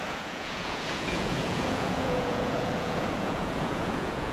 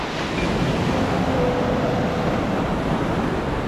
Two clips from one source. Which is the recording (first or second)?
second